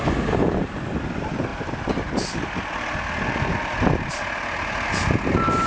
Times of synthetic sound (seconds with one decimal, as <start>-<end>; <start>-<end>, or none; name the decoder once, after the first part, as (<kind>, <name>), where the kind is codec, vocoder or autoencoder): none

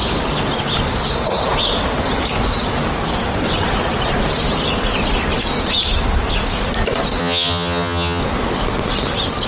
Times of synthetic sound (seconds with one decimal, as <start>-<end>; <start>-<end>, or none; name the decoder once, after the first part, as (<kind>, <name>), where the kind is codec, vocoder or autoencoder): 7.2-8.2 (vocoder, HiFi-GAN)

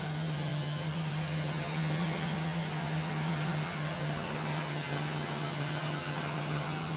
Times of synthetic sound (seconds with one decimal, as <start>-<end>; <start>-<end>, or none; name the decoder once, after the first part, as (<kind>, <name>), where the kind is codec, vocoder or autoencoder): 0.0-7.0 (vocoder, HiFi-GAN)